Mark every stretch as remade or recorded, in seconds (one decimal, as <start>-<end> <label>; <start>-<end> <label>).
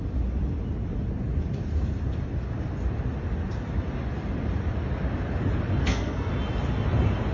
0.0-5.8 recorded; 5.8-6.3 remade; 6.3-7.3 recorded